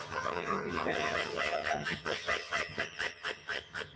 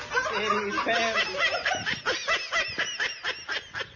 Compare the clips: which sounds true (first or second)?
second